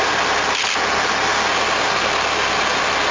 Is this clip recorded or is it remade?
recorded